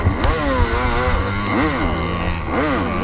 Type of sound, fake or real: real